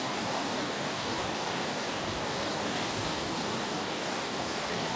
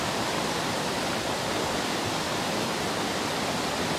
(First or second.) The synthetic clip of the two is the first